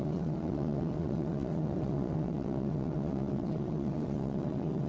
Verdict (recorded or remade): remade